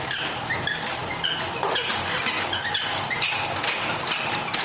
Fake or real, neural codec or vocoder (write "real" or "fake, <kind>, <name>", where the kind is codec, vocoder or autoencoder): real